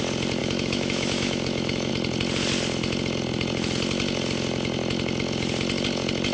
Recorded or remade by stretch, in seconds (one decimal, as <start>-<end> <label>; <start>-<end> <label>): 0.0-0.4 recorded; 0.4-1.9 remade; 1.9-6.3 recorded